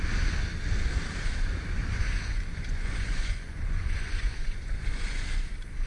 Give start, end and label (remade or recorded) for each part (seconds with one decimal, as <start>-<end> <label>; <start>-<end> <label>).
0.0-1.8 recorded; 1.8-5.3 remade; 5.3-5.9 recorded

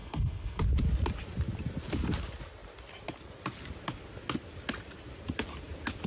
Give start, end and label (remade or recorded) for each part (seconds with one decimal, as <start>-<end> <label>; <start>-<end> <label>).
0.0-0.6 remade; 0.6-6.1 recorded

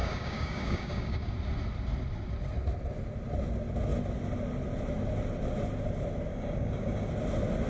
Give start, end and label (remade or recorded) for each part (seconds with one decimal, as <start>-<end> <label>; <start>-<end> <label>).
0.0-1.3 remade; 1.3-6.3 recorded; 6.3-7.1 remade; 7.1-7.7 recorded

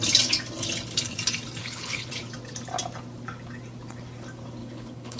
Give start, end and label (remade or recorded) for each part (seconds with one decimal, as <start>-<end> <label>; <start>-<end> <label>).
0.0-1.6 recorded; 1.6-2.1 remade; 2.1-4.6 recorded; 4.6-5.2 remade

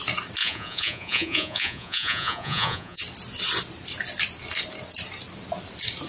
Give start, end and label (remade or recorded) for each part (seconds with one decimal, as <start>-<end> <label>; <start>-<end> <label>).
0.0-0.4 recorded; 0.4-3.0 remade; 3.0-6.1 recorded

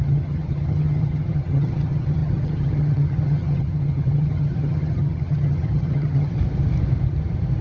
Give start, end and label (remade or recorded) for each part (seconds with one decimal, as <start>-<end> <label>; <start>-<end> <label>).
0.0-6.4 remade; 6.4-7.6 recorded